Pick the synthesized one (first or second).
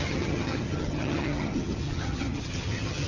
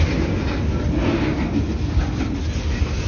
first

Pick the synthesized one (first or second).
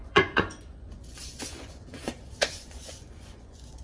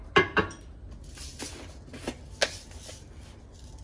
first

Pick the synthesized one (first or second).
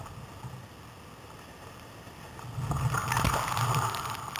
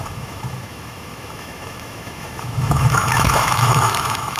second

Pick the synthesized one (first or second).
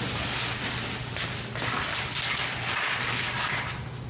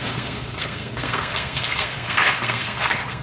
second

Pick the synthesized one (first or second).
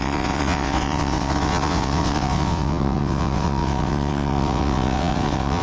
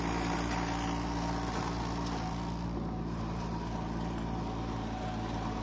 first